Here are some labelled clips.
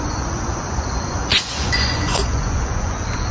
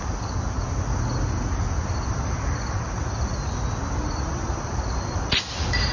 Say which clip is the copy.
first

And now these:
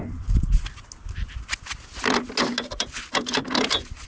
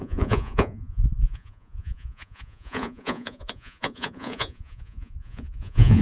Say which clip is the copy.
second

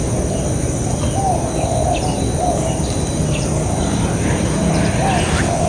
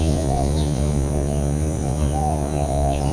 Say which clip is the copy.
second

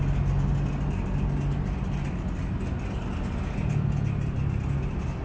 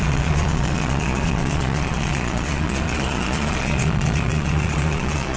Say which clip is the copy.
second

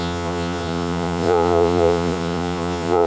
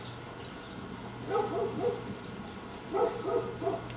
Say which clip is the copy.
first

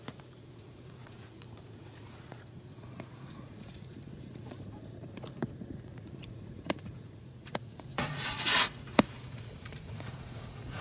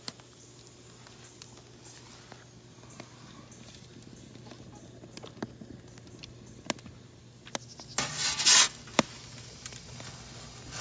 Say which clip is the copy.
first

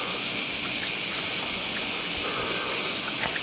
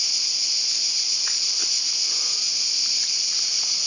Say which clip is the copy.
first